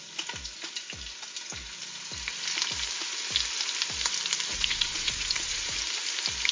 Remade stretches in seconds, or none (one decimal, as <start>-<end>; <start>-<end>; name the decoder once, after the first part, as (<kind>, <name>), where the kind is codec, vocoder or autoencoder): 4.5-5.8 (vocoder, Vocos)